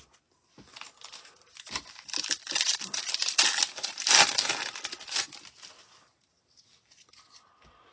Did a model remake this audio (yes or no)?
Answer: no